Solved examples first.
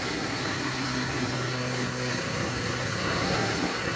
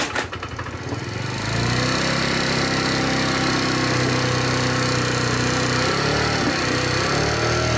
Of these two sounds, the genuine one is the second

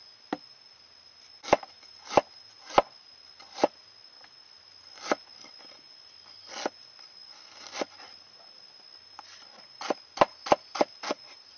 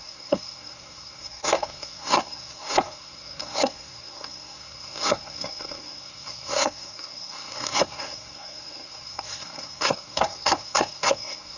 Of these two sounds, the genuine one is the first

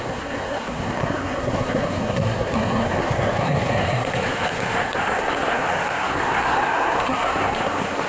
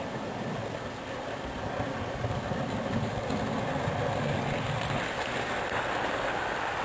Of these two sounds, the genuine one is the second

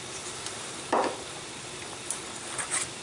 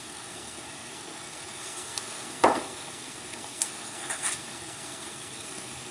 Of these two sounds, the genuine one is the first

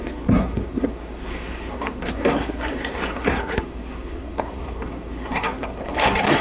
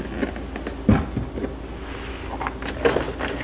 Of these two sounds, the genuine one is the second